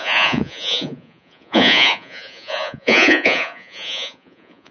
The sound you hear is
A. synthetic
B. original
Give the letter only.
A